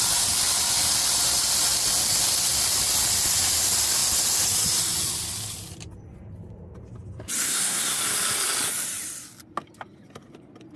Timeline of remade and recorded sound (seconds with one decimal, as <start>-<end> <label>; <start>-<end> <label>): 0.0-7.4 recorded; 7.4-8.0 remade; 8.0-10.8 recorded